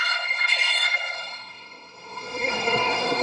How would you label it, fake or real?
fake